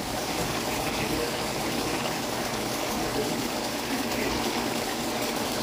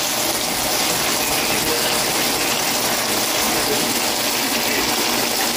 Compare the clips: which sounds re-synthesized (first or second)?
first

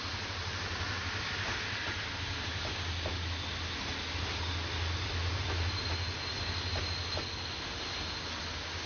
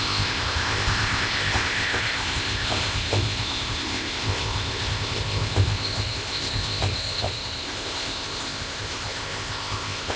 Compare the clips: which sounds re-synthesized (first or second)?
second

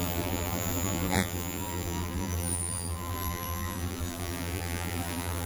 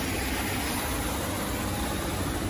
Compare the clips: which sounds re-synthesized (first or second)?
first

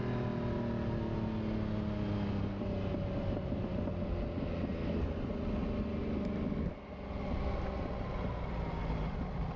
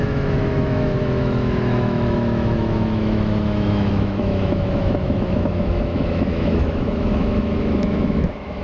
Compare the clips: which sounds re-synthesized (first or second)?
second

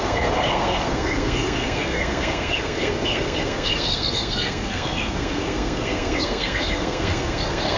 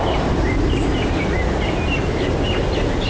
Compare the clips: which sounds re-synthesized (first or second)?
first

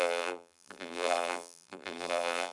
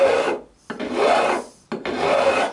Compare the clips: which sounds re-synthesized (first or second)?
first